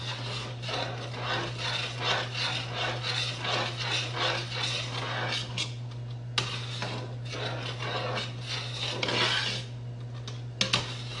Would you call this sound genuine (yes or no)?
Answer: yes